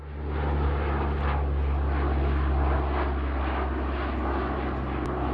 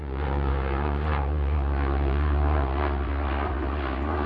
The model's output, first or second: second